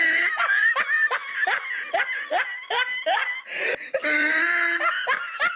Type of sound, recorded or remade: recorded